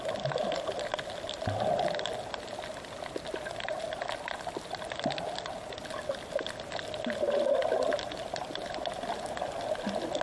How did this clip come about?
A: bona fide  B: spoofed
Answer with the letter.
A